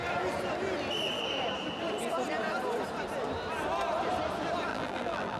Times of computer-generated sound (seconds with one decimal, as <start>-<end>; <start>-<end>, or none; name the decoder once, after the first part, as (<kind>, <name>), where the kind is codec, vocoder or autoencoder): 4.7-5.4 (vocoder, BigVGAN v2)